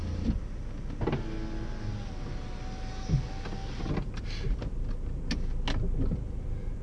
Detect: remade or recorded recorded